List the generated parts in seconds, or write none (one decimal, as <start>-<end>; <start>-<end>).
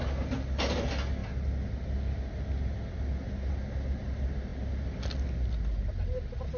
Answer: none